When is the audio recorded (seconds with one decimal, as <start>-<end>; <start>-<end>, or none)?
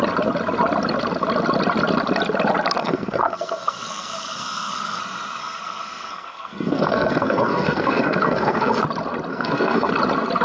0.0-2.8; 5.0-5.4; 8.8-9.3; 9.9-10.4